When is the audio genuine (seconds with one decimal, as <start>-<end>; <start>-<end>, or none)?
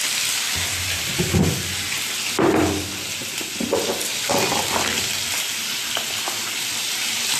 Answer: 0.0-7.4